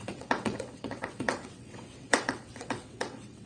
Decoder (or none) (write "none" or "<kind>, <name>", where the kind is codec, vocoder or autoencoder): vocoder, WaveNeXt